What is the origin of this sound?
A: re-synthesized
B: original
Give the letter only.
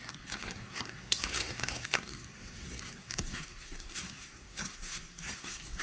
A